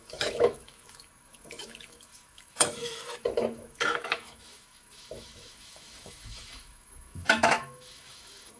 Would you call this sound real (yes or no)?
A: no